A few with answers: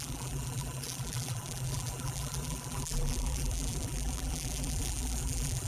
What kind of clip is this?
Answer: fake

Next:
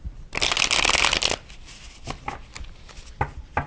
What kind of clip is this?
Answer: real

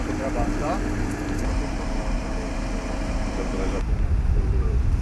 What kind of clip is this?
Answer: fake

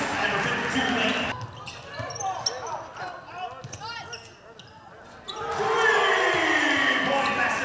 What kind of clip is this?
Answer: real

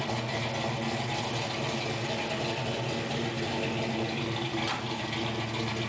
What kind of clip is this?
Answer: real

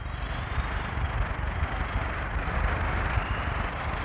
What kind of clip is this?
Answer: fake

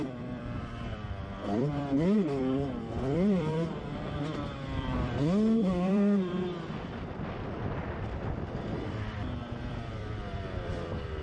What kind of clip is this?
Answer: fake